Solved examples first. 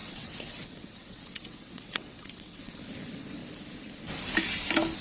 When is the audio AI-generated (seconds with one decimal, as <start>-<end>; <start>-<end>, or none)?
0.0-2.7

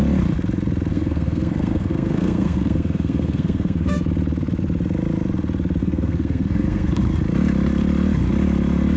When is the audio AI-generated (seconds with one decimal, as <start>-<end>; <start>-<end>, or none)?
0.9-4.0; 5.8-7.0

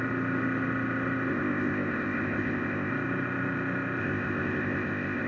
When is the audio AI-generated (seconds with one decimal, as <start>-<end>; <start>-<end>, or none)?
1.3-2.9; 4.0-5.3

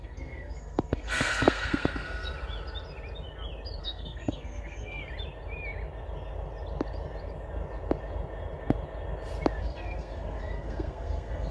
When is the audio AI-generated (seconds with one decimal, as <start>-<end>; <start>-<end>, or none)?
0.0-2.3; 3.8-5.0; 9.6-11.5